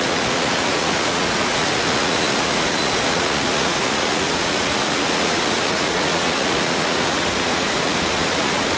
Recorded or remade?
remade